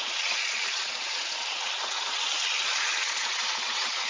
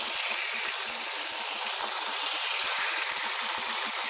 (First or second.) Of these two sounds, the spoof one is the first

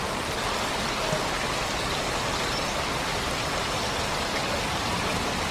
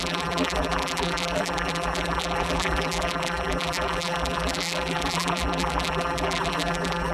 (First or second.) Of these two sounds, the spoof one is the second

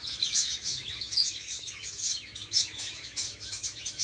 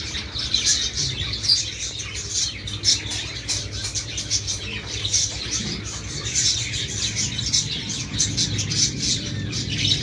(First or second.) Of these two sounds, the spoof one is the first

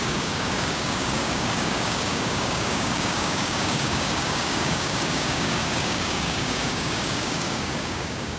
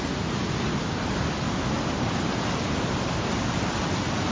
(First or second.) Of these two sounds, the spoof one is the first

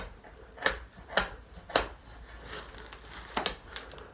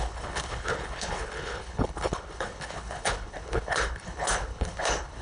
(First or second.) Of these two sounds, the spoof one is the second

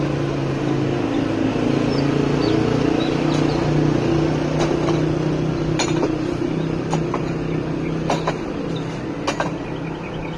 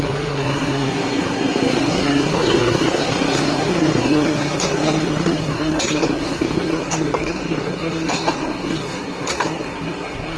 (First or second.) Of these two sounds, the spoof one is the second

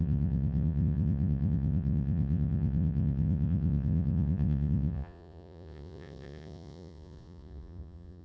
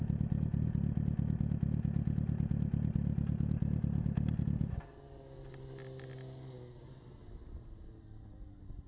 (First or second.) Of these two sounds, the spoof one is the first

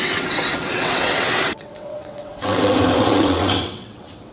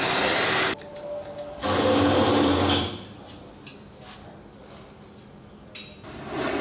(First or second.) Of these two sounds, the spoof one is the first